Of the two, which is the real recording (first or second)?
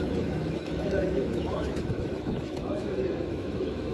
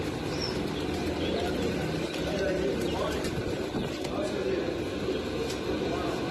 second